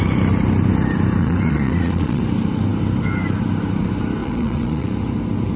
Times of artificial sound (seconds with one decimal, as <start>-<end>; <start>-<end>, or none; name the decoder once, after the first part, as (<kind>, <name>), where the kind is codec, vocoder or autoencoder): 1.2-2.2 (vocoder, Vocos); 4.2-4.9